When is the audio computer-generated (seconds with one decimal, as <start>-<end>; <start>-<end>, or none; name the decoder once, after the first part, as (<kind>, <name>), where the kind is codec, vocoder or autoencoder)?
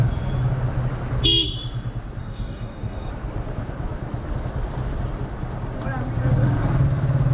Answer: 2.2-3.1 (codec, DAC)